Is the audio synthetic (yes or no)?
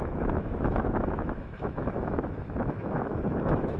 yes